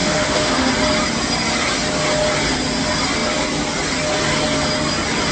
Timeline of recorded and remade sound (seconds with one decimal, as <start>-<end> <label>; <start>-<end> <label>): 0.0-0.7 remade; 0.7-5.3 recorded